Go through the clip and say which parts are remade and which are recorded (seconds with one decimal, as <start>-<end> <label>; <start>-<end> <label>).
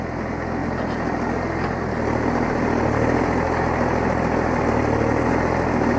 0.0-6.0 recorded